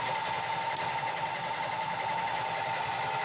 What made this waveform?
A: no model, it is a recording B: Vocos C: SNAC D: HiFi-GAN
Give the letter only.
A